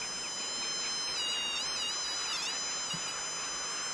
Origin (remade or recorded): recorded